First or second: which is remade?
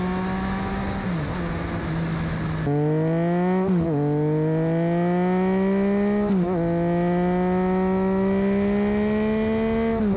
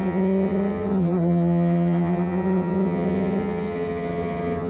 second